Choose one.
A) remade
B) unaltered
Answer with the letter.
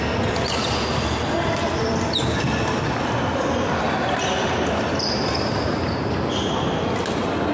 B